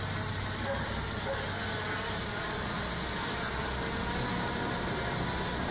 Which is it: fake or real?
real